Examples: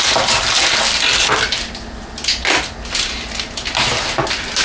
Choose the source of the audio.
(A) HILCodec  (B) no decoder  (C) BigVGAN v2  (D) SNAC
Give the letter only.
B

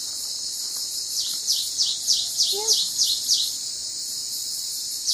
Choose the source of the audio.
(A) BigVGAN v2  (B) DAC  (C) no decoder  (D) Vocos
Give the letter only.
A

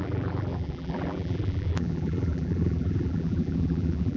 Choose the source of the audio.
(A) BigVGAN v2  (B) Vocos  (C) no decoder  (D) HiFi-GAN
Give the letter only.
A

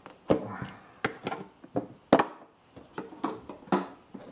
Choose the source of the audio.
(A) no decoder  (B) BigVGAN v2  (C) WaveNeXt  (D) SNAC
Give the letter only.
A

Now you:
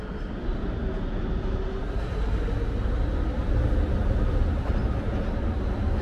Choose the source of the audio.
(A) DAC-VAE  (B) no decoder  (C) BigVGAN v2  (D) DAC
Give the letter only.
B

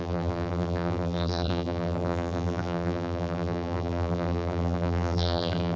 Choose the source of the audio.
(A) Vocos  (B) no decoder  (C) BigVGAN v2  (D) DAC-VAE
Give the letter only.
C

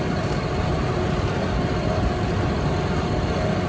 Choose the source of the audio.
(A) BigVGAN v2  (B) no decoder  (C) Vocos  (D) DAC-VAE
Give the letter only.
A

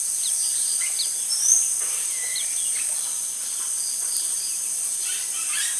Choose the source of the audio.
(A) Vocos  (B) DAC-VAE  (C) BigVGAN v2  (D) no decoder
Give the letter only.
C